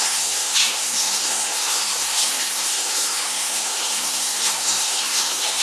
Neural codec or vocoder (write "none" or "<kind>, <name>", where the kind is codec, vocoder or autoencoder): codec, SNAC